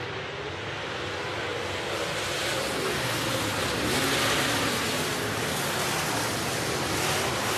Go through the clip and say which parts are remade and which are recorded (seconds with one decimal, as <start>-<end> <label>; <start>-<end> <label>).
0.0-7.6 recorded